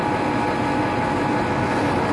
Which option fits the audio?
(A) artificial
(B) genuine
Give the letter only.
B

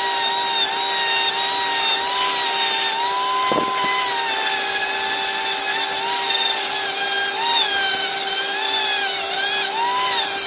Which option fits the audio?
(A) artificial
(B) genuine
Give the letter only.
B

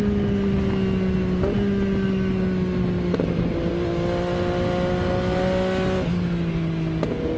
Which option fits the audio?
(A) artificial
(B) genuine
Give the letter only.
B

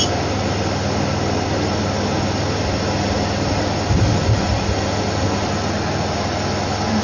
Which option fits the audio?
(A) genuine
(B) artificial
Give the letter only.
A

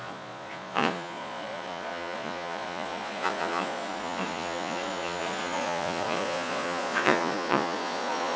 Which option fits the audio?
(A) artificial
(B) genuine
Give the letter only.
A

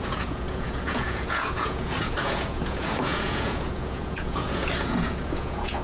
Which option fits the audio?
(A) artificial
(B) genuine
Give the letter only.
A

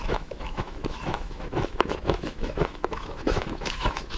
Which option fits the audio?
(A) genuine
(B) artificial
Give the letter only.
B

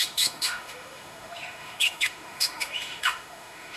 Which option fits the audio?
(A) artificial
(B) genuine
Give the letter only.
A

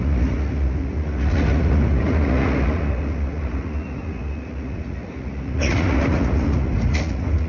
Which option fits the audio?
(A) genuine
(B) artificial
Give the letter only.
B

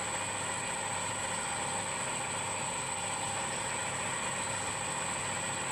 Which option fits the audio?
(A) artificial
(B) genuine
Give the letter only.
B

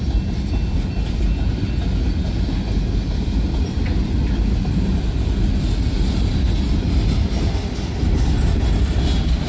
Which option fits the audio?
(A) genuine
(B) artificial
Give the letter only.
A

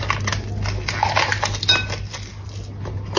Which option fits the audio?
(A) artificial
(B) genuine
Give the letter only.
B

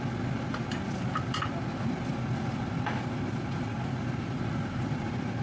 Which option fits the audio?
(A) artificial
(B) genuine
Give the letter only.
A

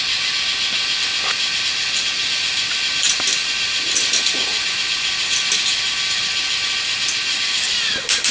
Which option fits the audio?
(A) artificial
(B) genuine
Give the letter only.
B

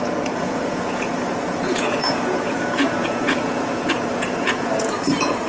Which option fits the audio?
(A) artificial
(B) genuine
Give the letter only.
A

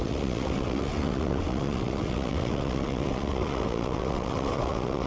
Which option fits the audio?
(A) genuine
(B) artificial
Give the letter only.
B